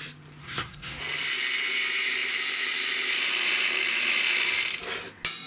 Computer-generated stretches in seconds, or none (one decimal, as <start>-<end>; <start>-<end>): 0.4-1.0